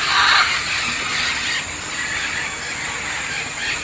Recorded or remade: recorded